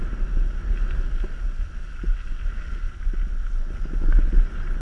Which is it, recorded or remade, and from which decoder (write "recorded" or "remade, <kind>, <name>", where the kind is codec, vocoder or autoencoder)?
recorded